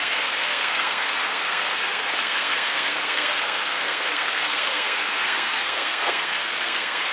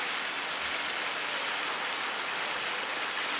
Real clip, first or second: second